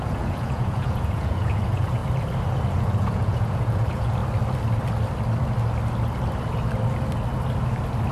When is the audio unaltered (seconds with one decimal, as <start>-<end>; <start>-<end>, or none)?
2.0-2.7; 4.2-8.1